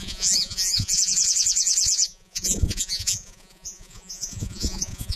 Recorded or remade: remade